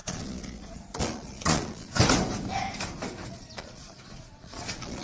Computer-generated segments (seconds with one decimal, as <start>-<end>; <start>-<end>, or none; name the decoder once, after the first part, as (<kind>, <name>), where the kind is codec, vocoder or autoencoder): 0.0-2.0 (vocoder, Vocos); 3.3-5.0